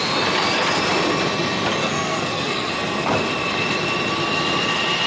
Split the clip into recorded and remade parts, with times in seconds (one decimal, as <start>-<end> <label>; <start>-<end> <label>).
0.0-1.8 recorded; 1.8-2.7 remade; 2.7-5.1 recorded